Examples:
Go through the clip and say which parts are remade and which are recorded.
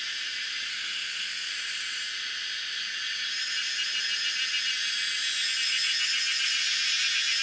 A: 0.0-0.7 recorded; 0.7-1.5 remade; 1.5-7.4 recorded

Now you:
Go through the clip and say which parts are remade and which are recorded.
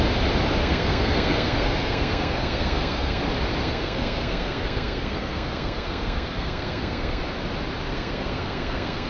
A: 0.0-0.6 recorded; 0.6-3.2 remade; 3.2-3.6 recorded; 3.6-7.2 remade; 7.2-7.9 recorded; 7.9-9.1 remade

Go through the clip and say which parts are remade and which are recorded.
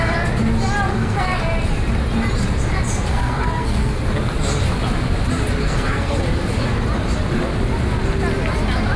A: 0.0-0.9 recorded; 0.9-1.4 remade; 1.4-3.1 recorded; 3.1-4.0 remade; 4.0-5.6 recorded; 5.6-6.2 remade; 6.2-9.0 recorded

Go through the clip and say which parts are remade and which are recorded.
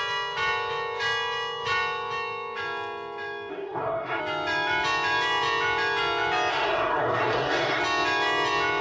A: 0.0-3.5 recorded; 3.5-4.2 remade; 4.2-6.5 recorded; 6.5-7.8 remade; 7.8-8.8 recorded